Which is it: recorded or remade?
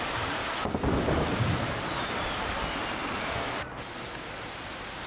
recorded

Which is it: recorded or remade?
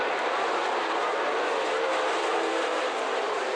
remade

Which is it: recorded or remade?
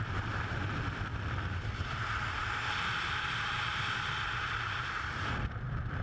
remade